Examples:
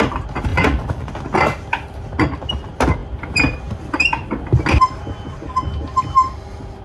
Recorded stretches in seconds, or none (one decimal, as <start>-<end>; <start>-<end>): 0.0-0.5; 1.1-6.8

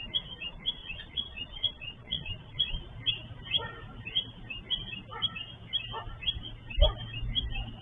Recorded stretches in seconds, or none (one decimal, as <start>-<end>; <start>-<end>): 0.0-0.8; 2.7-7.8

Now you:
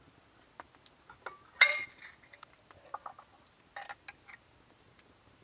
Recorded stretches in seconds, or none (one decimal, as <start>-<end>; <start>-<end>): 0.0-5.4